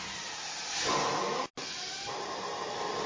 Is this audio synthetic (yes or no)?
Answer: no